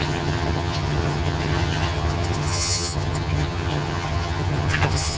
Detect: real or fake fake